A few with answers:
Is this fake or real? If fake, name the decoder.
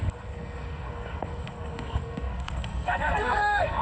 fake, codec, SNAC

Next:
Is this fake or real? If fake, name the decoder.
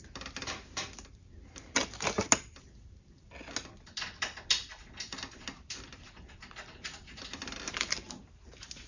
real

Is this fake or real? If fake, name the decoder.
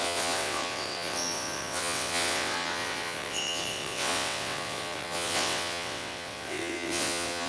fake, vocoder, WaveNeXt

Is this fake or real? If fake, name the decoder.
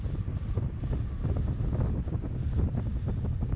real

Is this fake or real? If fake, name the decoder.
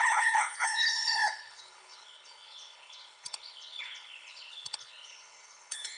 fake, codec, HILCodec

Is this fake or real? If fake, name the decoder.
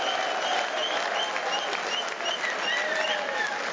real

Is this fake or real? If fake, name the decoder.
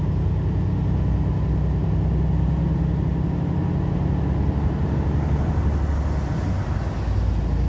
real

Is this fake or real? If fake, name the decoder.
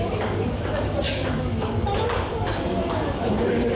fake, codec, DAC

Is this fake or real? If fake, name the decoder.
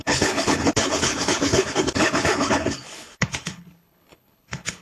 fake, codec, HILCodec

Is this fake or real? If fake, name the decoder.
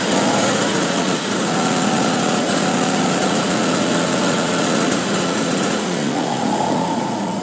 fake, vocoder, Vocos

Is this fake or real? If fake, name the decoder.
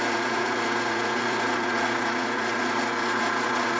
fake, vocoder, Vocos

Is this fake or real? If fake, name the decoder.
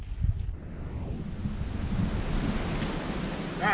real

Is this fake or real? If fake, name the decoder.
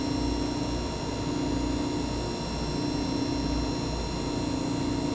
real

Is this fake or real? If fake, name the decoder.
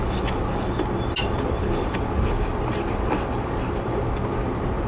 real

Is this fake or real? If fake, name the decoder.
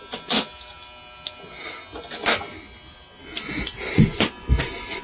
real